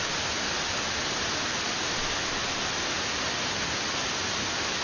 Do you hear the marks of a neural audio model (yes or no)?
no